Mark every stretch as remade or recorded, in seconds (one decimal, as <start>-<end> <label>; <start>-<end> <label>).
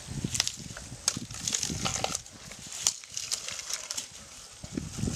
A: 0.0-5.2 recorded